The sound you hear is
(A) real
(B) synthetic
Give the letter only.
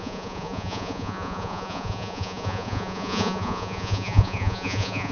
B